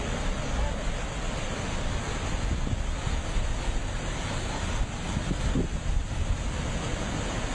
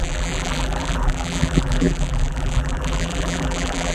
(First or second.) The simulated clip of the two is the second